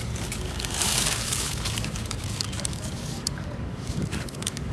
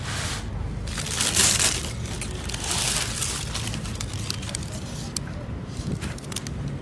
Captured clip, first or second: second